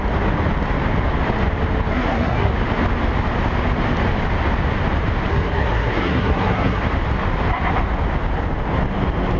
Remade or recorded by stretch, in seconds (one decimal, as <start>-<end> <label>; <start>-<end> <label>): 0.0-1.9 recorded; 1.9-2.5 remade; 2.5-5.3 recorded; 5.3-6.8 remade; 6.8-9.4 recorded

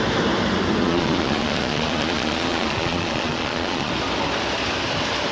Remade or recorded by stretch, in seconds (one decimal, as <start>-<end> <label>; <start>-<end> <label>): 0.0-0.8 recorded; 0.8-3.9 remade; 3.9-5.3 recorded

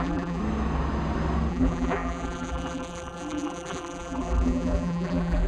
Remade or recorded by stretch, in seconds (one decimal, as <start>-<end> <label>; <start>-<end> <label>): 0.0-0.4 remade; 0.4-1.5 recorded; 1.5-5.5 remade

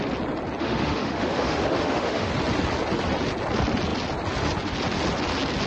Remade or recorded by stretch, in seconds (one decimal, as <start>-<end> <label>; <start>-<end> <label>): 0.0-0.6 recorded; 0.6-2.3 remade; 2.3-5.7 recorded

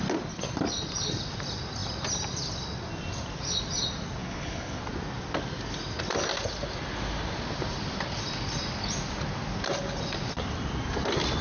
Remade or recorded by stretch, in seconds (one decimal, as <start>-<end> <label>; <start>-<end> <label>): 0.0-4.2 recorded; 4.2-4.8 remade; 4.8-11.4 recorded

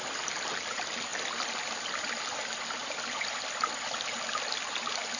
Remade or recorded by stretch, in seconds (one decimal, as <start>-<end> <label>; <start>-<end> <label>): 0.0-1.1 recorded; 1.1-2.0 remade; 2.0-2.8 recorded; 2.8-4.6 remade; 4.6-5.2 recorded

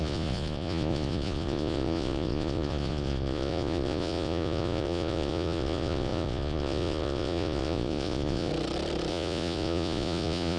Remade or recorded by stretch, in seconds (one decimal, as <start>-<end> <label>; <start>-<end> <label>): 0.0-8.5 remade; 8.5-9.1 recorded; 9.1-10.6 remade